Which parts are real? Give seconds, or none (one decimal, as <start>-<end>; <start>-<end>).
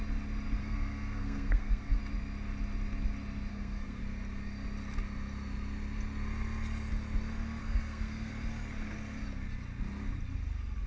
0.0-0.6; 2.0-3.5; 4.0-7.6; 8.3-10.9